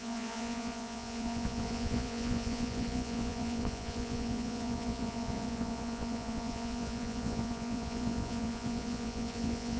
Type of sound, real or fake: fake